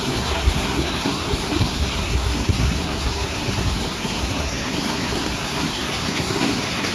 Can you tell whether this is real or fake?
fake